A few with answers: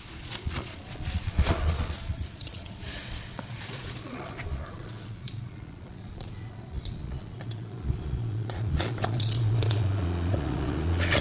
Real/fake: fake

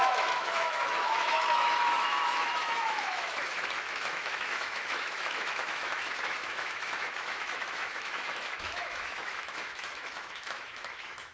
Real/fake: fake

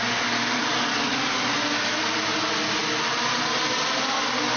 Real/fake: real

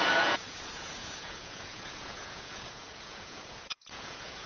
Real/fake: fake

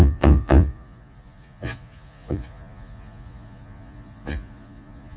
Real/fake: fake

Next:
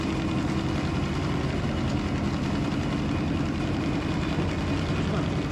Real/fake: real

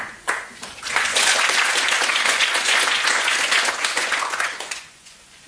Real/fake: fake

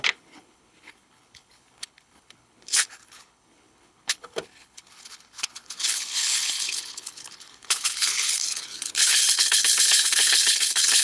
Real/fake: fake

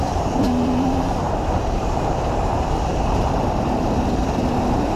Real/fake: fake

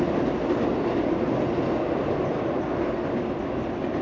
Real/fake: real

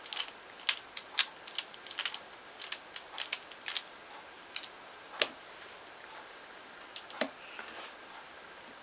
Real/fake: real